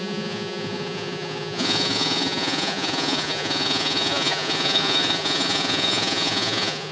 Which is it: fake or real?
fake